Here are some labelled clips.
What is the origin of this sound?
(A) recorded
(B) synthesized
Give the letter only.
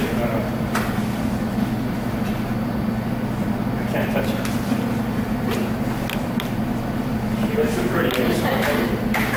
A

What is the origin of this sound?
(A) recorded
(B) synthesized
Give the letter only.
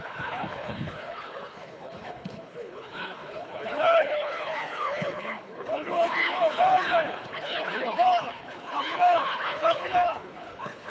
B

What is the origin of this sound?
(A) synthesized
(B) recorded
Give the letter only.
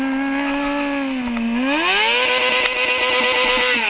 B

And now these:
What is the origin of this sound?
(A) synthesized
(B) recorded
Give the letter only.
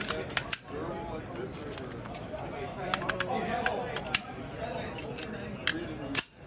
B